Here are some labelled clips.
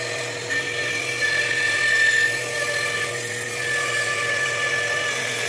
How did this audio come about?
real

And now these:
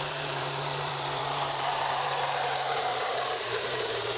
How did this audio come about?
fake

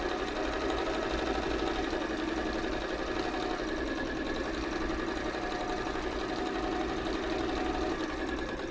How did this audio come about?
real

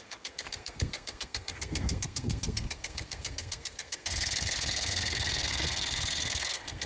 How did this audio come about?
fake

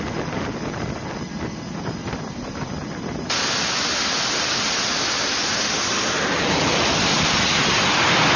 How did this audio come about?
real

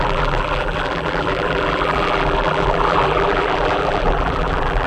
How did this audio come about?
fake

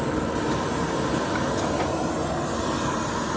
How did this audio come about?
real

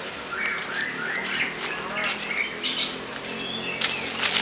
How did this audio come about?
real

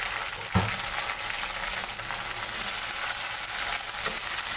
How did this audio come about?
real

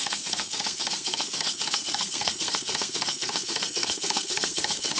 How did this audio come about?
fake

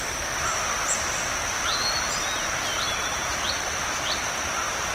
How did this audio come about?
real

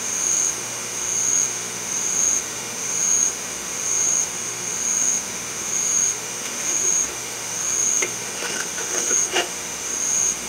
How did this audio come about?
fake